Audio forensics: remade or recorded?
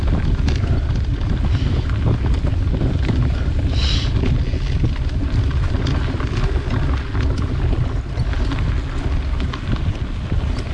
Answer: recorded